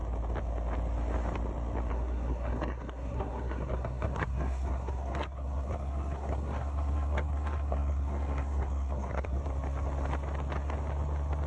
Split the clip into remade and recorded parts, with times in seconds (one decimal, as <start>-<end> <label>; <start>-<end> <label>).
0.0-1.9 recorded; 1.9-9.4 remade; 9.4-11.5 recorded